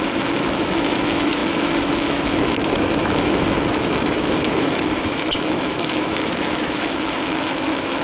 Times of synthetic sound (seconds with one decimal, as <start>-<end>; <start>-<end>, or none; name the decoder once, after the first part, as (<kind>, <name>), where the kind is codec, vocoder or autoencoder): 0.0-8.0 (autoencoder, DAC-VAE)